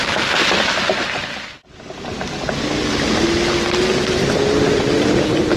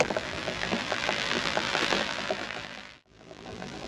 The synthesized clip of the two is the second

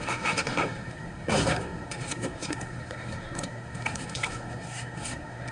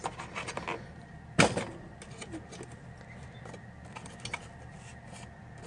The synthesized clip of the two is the first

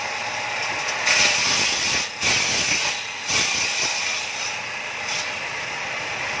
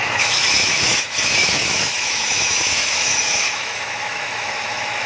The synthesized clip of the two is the second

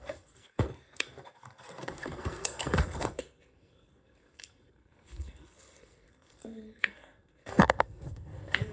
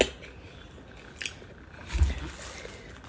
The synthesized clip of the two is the first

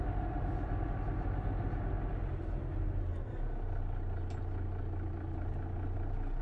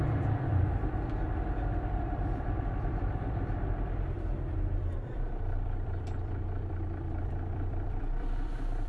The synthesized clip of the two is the second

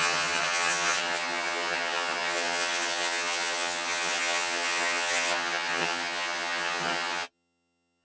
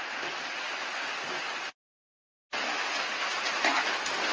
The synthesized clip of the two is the first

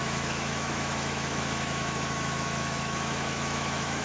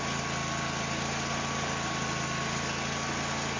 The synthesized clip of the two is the first